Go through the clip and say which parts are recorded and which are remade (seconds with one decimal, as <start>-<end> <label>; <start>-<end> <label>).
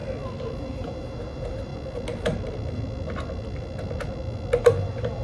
0.0-0.6 recorded; 0.6-1.7 remade; 1.7-4.6 recorded; 4.6-5.2 remade